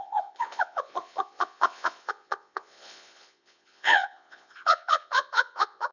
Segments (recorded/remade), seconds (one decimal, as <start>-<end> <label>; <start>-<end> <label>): 0.0-5.9 remade